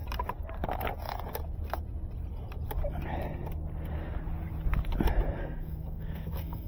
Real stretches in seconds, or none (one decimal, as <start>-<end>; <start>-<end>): 0.0-5.4